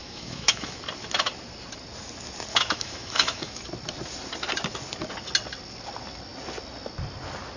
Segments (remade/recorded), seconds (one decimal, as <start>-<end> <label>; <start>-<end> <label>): 0.0-0.8 remade; 0.8-2.5 recorded; 2.5-3.6 remade; 3.6-7.6 recorded

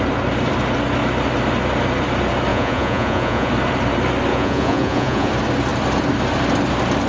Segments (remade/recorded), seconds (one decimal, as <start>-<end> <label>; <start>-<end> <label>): 0.0-2.5 recorded; 2.5-3.5 remade; 3.5-4.3 recorded; 4.3-5.3 remade; 5.3-7.1 recorded

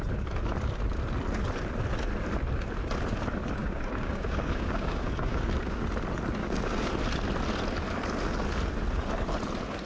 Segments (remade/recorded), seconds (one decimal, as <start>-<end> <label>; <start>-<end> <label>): 0.0-3.6 recorded; 3.6-5.8 remade; 5.8-6.4 recorded; 6.4-6.9 remade; 6.9-9.9 recorded

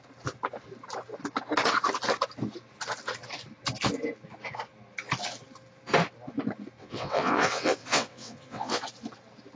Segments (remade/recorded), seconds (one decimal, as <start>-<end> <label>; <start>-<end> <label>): 0.0-6.8 recorded; 6.8-8.8 remade; 8.8-9.6 recorded

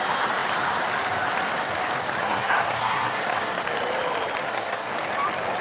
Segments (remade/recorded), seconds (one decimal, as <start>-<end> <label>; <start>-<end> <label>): 0.0-2.2 recorded; 2.2-3.6 remade; 3.6-4.4 recorded; 4.4-4.9 remade; 4.9-5.6 recorded

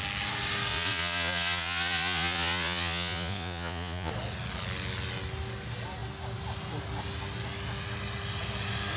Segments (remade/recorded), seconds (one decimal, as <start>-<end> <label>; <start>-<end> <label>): 0.0-0.7 recorded; 0.7-4.1 remade; 4.1-9.0 recorded

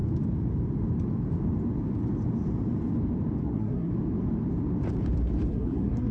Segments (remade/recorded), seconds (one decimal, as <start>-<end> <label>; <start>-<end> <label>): 0.0-3.4 recorded; 3.4-3.9 remade; 3.9-5.5 recorded; 5.5-6.1 remade